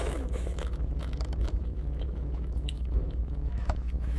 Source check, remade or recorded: remade